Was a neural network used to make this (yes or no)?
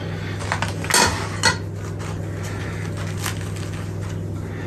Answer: no